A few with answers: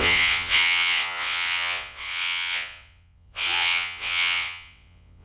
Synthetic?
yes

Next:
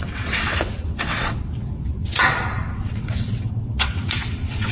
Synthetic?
yes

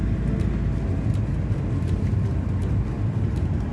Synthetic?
no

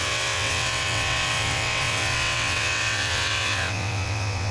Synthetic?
yes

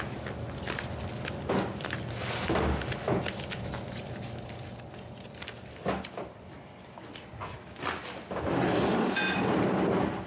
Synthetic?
no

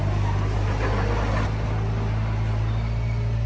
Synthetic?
no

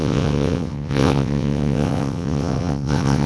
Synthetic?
yes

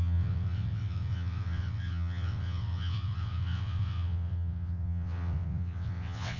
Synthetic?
yes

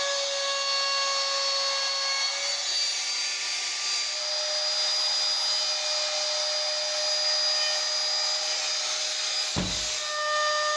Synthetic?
no